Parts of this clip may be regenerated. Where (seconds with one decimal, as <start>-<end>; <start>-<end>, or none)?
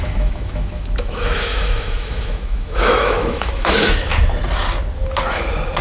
0.0-4.1